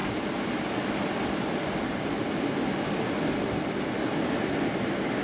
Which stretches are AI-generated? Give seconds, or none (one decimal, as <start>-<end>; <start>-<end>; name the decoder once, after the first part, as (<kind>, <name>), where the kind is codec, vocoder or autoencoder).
none